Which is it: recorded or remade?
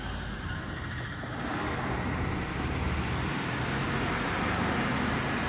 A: recorded